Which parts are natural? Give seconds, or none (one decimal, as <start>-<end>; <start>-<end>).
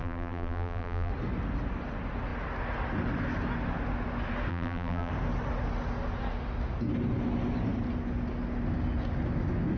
1.1-4.5; 5.1-9.8